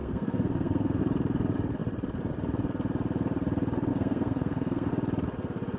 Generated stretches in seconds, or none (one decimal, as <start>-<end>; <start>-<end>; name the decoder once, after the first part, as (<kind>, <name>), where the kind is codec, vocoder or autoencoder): 0.0-1.0 (codec, SNAC); 3.9-4.9